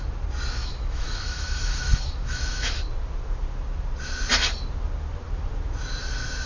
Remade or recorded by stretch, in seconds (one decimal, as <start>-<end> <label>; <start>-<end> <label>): 0.0-0.6 recorded; 0.6-2.8 remade; 2.8-6.5 recorded

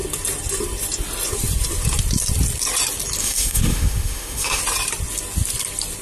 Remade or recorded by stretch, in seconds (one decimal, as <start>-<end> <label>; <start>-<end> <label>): 0.0-3.2 recorded; 3.2-4.6 remade; 4.6-6.0 recorded

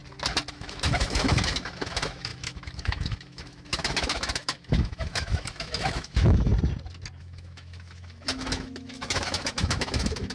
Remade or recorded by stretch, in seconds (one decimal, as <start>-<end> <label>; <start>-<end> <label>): 0.0-0.5 recorded; 0.5-6.5 remade; 6.5-7.2 recorded; 7.2-10.3 remade

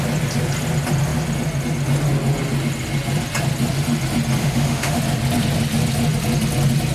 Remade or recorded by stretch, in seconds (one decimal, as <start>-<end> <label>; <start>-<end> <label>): 0.0-4.4 recorded; 4.4-5.0 remade; 5.0-6.9 recorded

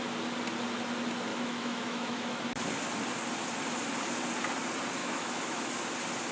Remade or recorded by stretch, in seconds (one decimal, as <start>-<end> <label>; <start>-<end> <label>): 0.0-1.3 recorded; 1.3-2.4 remade; 2.4-5.0 recorded; 5.0-5.7 remade; 5.7-6.3 recorded

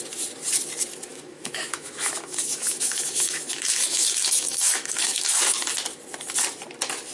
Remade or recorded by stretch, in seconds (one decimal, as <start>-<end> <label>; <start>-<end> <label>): 0.0-1.1 recorded; 1.1-5.4 remade; 5.4-7.1 recorded